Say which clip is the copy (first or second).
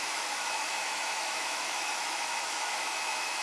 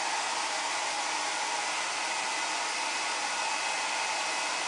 first